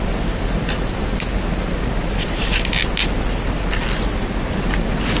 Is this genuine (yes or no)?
yes